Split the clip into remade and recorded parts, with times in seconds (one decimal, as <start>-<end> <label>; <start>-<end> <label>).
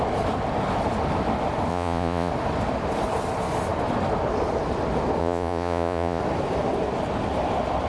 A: 0.0-1.7 recorded; 1.7-2.3 remade; 2.3-5.2 recorded; 5.2-6.2 remade; 6.2-7.9 recorded